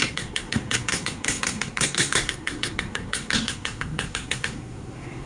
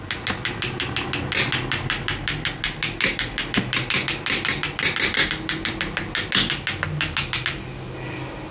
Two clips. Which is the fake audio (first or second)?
first